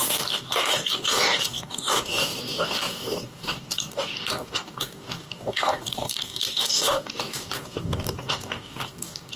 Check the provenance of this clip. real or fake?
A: fake